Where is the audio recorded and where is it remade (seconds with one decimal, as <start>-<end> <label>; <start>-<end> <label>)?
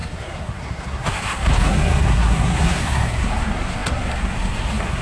0.0-5.0 remade